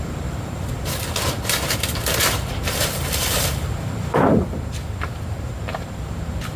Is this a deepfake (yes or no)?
yes